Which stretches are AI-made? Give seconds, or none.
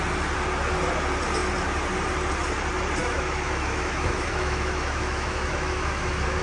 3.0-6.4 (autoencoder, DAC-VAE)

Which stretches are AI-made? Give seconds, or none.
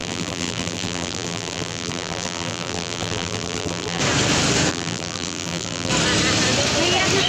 0.0-4.0 (vocoder, BigVGAN v2); 4.7-5.9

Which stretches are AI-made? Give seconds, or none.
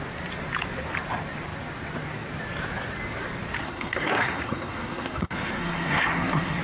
3.6-6.6 (codec, SNAC)